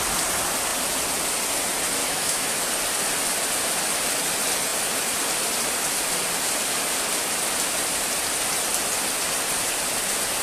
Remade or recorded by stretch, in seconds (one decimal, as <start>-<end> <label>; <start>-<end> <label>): 0.0-2.0 recorded; 2.0-2.7 remade; 2.7-10.4 recorded